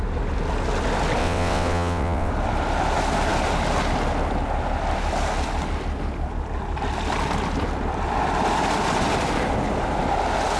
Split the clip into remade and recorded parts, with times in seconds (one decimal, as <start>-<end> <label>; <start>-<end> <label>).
0.0-1.2 recorded; 1.2-2.3 remade; 2.3-10.6 recorded